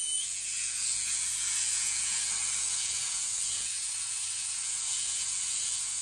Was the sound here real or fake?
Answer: fake